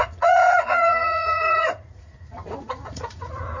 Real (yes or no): no